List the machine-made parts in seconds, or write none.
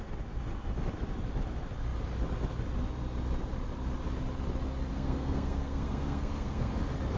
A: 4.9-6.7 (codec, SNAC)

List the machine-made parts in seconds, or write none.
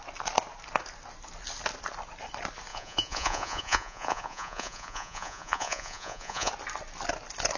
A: 2.7-6.5 (vocoder, Vocos)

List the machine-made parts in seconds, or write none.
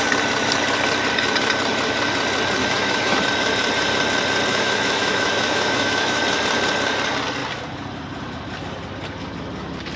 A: 2.6-3.2 (autoencoder, DAC-VAE); 4.5-6.2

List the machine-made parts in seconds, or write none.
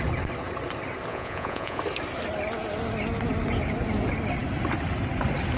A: 1.1-1.8 (vocoder, Vocos)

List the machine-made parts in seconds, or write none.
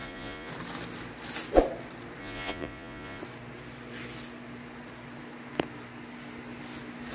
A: 0.0-0.5 (vocoder, Vocos); 2.2-3.2